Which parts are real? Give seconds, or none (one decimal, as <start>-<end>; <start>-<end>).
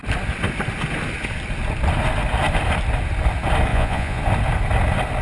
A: 0.0-3.7; 4.2-5.2